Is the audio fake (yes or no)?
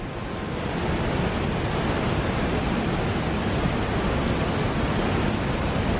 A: no